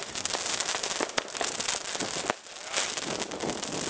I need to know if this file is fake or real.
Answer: real